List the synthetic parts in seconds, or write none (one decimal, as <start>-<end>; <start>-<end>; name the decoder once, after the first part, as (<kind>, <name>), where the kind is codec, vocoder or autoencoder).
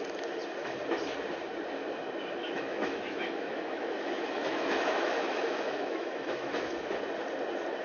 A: 2.4-7.0 (autoencoder, DAC-VAE)